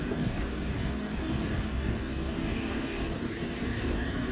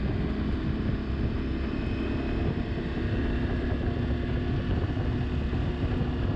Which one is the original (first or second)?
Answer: second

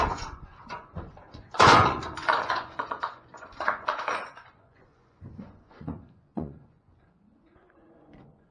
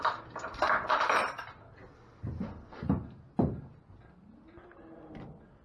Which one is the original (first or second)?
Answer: second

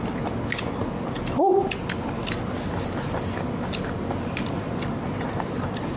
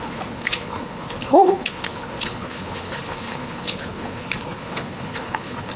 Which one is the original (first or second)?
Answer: first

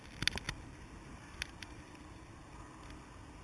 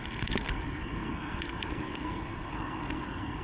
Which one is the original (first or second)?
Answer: first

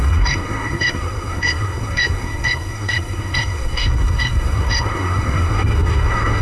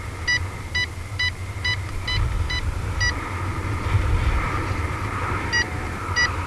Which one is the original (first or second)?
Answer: second